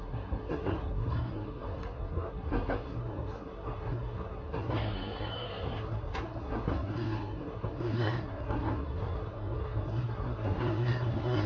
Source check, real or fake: fake